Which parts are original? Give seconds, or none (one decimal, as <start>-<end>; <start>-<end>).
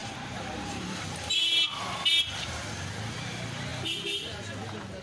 1.4-3.7; 4.4-5.0